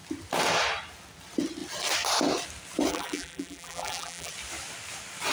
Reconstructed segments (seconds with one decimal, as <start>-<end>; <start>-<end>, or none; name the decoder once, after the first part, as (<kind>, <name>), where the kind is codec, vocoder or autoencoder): 2.9-4.3 (vocoder, BigVGAN v2)